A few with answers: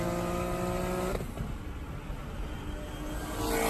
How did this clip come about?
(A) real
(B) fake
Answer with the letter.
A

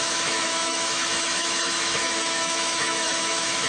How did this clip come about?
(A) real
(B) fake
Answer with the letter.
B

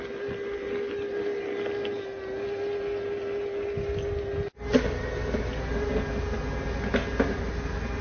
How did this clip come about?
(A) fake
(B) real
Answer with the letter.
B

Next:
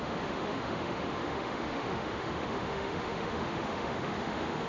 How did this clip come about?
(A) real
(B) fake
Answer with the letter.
B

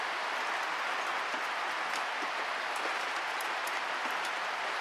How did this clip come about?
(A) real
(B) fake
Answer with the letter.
A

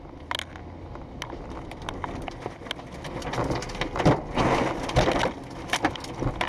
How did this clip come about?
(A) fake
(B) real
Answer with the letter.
B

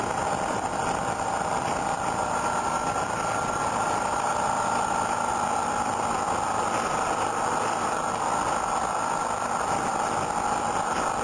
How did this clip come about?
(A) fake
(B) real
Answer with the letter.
B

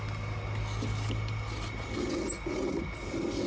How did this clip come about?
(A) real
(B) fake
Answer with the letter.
A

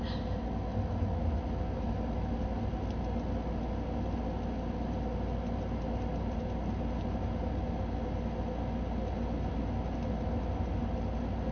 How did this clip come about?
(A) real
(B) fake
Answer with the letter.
A